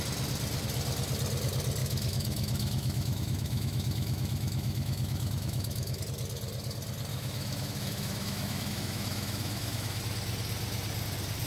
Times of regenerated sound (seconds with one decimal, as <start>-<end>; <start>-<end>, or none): 1.8-6.0; 7.1-10.0